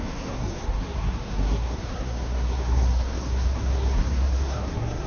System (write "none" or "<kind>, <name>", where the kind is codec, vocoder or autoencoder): codec, SNAC